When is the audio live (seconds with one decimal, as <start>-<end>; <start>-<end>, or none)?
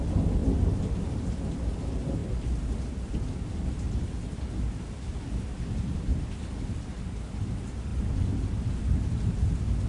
0.0-0.4; 1.2-2.2; 6.8-9.9